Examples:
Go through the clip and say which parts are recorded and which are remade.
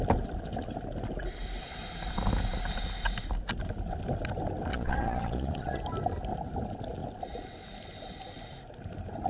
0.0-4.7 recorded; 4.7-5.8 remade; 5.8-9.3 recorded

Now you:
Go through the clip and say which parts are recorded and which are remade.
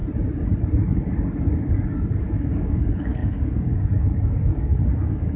0.0-2.2 recorded; 2.2-5.4 remade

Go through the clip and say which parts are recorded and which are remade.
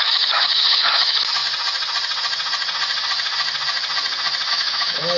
0.0-1.4 remade; 1.4-4.5 recorded; 4.5-5.2 remade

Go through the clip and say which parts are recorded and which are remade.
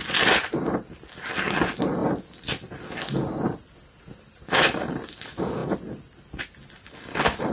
0.0-7.5 recorded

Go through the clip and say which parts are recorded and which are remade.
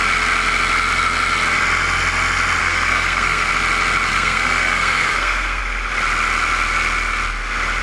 0.0-2.6 recorded; 2.6-3.5 remade; 3.5-4.1 recorded; 4.1-5.6 remade; 5.6-7.8 recorded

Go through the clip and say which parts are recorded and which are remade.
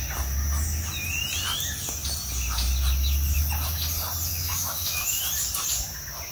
0.0-4.3 recorded; 4.3-5.2 remade; 5.2-6.3 recorded